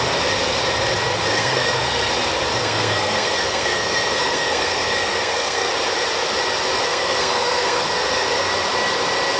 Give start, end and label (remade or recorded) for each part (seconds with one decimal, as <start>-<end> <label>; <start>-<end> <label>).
0.0-1.3 recorded; 1.3-2.1 remade; 2.1-2.6 recorded; 2.6-5.7 remade; 5.7-6.8 recorded; 6.8-8.5 remade; 8.5-9.4 recorded